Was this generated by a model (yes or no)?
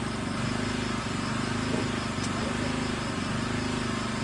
no